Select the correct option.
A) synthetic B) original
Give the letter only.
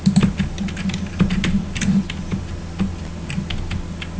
B